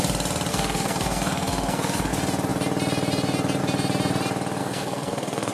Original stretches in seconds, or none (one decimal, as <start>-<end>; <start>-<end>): 0.0-0.5; 2.1-4.6